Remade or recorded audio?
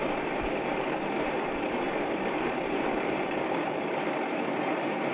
remade